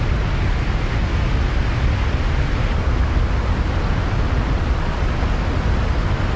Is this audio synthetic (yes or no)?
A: no